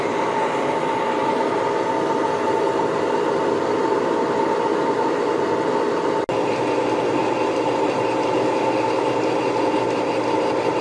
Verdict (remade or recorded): recorded